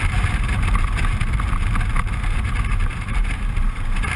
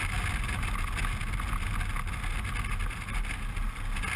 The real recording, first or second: second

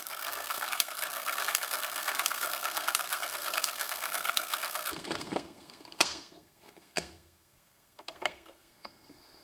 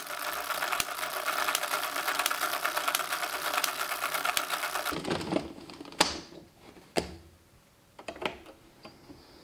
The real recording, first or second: second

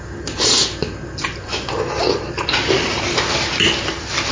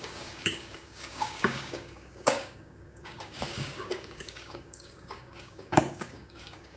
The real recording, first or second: first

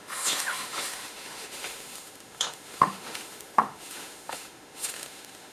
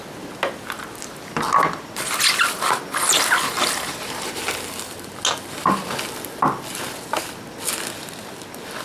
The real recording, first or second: second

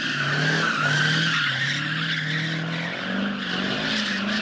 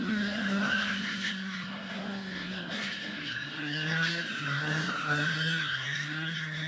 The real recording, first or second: first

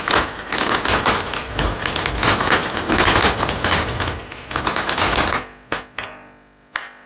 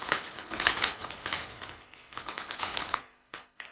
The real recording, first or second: first